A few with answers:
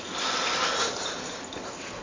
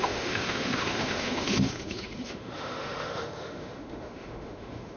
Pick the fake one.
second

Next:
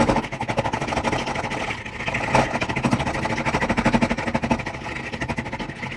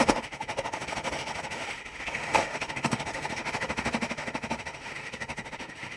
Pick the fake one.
second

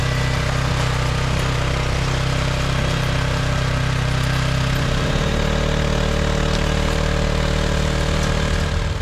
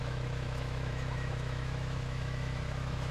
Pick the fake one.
second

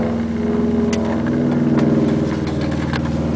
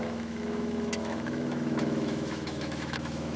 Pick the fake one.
second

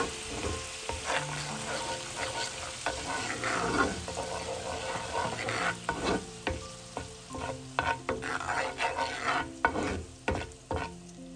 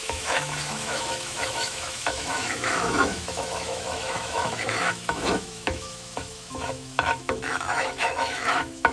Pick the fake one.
second